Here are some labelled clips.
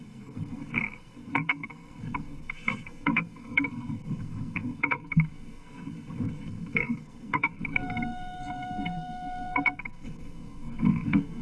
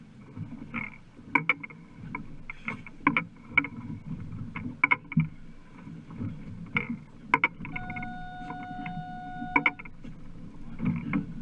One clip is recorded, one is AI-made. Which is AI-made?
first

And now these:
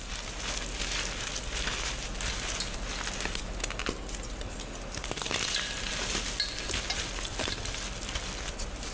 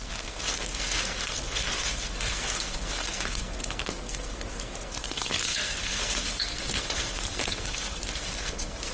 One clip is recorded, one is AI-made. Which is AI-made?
second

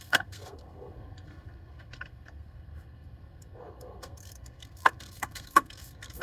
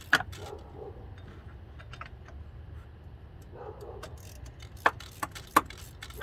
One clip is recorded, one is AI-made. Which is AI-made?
first